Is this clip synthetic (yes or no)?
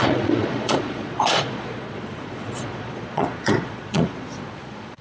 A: yes